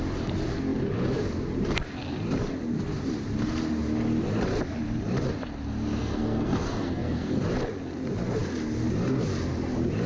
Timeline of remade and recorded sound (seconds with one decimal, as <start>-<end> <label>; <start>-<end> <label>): 0.0-6.0 recorded; 6.0-7.4 remade; 7.4-10.1 recorded